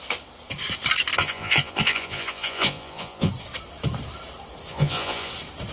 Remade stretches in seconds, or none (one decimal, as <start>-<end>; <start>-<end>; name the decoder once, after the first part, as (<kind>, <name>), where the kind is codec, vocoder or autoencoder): 1.2-3.3 (vocoder, Vocos); 4.7-5.3